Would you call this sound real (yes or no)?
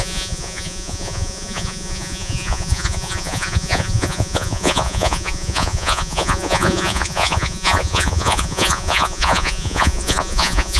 no